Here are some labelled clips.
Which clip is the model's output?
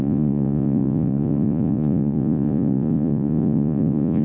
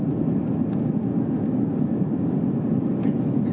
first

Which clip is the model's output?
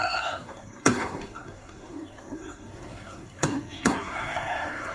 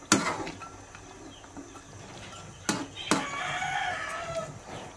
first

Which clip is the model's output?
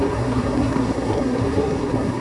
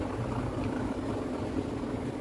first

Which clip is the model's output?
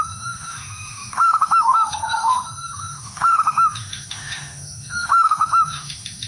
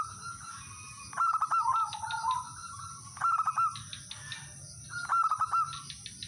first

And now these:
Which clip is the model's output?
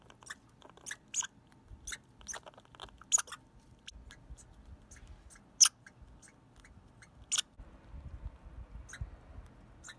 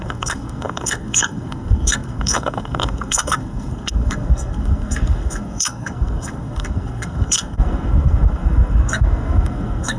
second